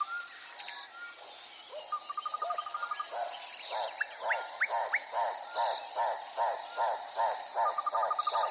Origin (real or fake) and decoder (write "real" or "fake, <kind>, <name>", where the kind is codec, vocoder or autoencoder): real